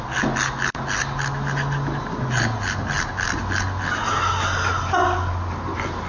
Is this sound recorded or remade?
recorded